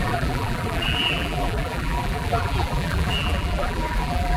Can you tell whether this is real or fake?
fake